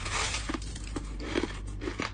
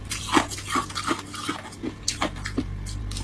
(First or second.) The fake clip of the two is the first